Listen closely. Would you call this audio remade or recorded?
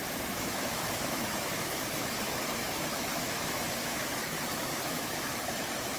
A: remade